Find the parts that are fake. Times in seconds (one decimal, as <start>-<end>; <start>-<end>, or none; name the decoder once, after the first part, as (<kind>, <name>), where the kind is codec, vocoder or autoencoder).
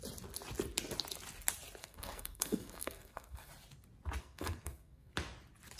1.8-3.5 (codec, SNAC); 4.2-5.1